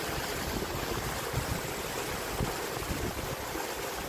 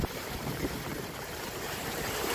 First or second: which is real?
first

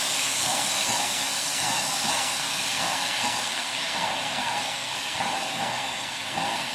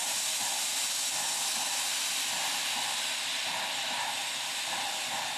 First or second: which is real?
second